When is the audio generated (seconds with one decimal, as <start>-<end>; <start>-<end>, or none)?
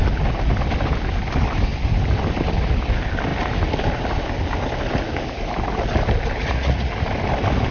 6.4-6.9